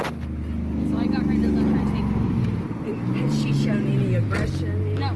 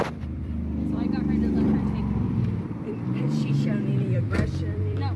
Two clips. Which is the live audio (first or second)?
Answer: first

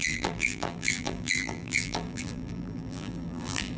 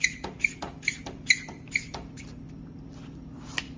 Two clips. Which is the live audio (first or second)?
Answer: second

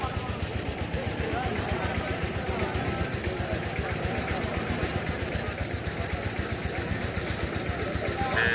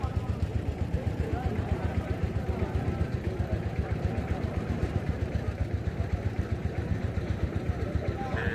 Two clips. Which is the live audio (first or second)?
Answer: first